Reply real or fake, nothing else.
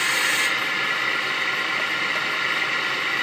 real